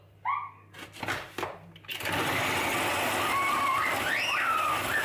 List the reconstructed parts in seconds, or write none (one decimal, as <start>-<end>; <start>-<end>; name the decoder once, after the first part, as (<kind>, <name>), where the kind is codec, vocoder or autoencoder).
none